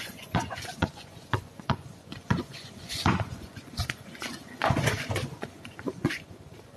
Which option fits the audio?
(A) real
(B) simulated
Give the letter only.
B